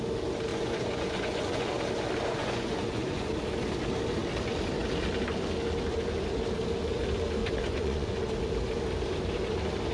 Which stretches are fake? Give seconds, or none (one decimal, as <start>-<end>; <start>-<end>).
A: 0.5-1.7; 2.4-3.3; 7.4-8.3